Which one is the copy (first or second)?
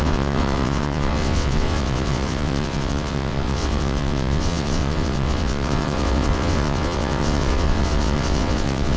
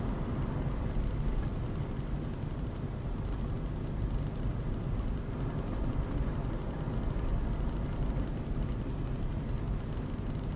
first